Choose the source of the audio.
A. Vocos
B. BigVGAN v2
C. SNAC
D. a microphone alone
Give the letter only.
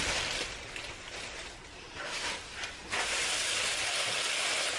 B